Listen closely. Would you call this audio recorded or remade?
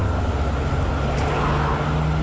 recorded